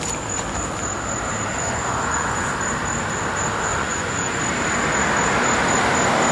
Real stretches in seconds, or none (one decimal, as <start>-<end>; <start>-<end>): 0.0-1.5; 2.5-3.7; 4.4-6.3